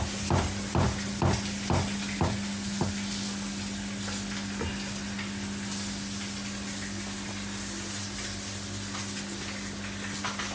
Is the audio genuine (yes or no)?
yes